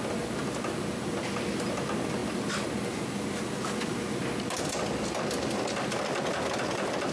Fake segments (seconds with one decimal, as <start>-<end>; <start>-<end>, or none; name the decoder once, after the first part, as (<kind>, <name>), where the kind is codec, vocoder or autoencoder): none